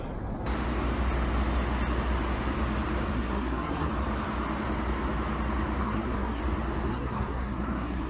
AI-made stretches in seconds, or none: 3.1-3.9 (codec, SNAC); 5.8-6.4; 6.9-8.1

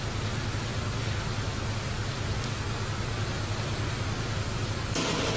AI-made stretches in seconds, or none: none

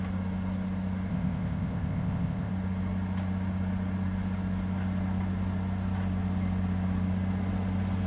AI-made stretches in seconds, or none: 1.1-2.5 (codec, ZipCodec)